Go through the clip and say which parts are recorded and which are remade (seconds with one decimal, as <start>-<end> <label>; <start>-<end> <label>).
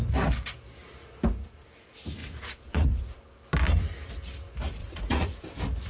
0.0-2.2 recorded; 2.2-3.2 remade; 3.2-4.8 recorded; 4.8-5.4 remade; 5.4-5.9 recorded